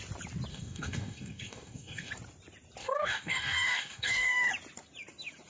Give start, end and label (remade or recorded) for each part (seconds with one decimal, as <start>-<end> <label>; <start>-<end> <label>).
0.0-0.5 recorded; 0.5-2.1 remade; 2.1-2.8 recorded; 2.8-4.5 remade; 4.5-5.5 recorded

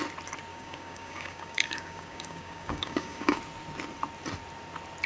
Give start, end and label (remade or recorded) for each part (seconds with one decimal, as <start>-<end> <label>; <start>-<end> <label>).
0.0-0.5 recorded; 0.5-3.4 remade; 3.4-5.1 recorded

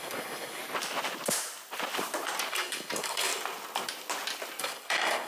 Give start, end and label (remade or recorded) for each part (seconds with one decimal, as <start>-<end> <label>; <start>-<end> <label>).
0.0-0.6 remade; 0.6-2.5 recorded; 2.5-3.3 remade; 3.3-4.6 recorded; 4.6-5.3 remade

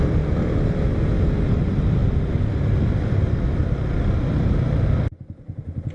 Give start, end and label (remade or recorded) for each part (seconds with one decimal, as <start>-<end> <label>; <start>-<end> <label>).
0.0-5.9 recorded

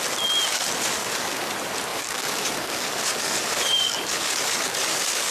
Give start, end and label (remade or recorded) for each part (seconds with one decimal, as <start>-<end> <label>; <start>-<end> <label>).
0.0-1.0 recorded; 1.0-1.5 remade; 1.5-1.9 recorded; 1.9-5.3 remade

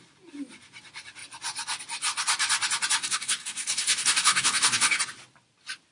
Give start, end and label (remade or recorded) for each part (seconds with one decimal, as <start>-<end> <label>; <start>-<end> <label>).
0.0-3.0 recorded; 3.0-5.0 remade; 5.0-5.9 recorded

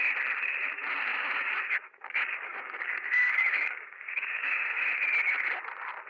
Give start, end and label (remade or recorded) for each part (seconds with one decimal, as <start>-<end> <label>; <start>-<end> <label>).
0.0-1.1 recorded; 1.1-4.8 remade; 4.8-6.1 recorded

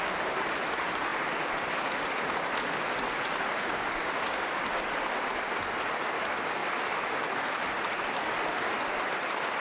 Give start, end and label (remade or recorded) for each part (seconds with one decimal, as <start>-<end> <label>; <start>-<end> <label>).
0.0-3.5 recorded; 3.5-4.6 remade; 4.6-9.6 recorded